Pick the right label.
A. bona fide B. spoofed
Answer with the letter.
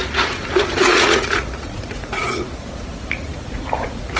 B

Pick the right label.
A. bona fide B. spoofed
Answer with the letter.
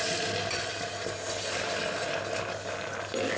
A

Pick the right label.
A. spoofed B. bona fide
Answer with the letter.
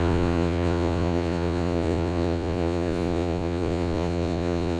A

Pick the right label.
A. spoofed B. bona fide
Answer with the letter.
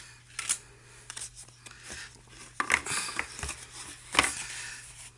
B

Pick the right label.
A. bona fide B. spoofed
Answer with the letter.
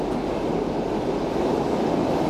A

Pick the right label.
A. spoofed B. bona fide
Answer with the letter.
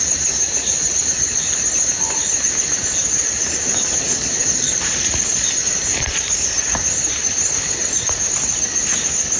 B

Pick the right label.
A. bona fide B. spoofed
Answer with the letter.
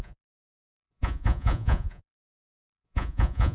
B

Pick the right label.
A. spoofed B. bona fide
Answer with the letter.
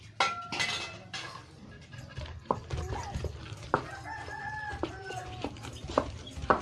B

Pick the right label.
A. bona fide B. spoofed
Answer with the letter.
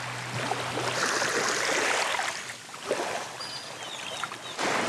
A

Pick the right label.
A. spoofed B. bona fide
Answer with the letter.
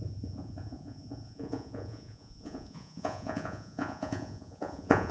A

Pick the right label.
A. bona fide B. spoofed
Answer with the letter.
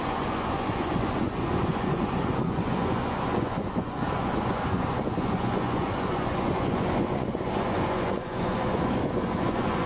B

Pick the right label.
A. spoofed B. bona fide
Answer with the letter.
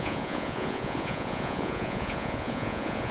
A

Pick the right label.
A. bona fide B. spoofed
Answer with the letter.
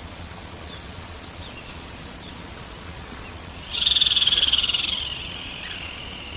B